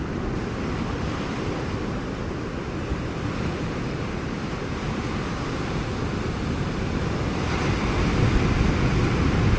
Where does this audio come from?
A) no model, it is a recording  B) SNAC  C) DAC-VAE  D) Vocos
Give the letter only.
A